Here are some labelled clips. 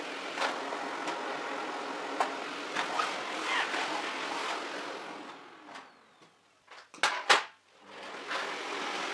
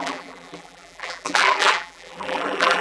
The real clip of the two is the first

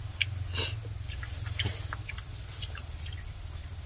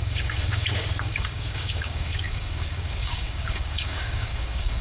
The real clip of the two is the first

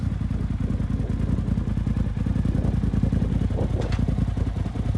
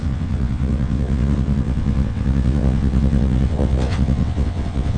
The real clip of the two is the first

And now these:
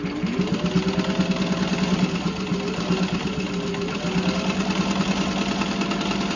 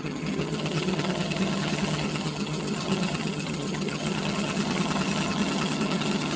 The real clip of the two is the first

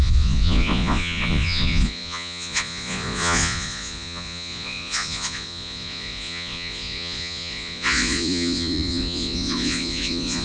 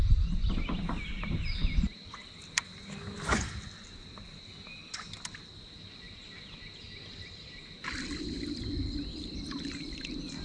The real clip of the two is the second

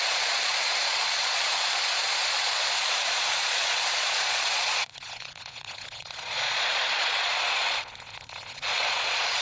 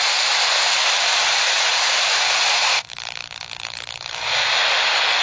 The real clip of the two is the second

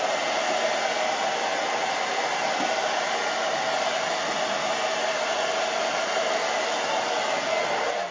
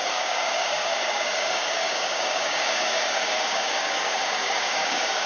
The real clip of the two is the first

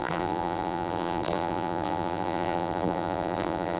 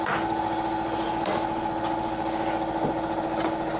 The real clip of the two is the second